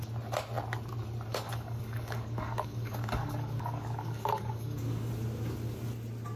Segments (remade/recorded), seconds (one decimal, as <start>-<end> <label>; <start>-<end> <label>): 0.0-1.3 recorded; 1.3-5.1 remade; 5.1-6.4 recorded